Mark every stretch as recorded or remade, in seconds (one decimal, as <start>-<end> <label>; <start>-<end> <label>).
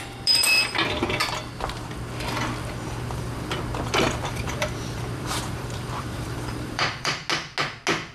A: 0.0-4.2 recorded; 4.2-7.3 remade; 7.3-8.1 recorded